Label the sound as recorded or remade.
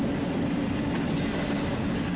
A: recorded